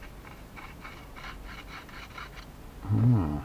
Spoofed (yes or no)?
no